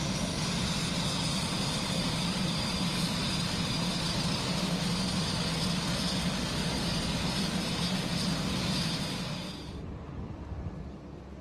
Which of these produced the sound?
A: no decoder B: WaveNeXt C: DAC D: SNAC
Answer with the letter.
A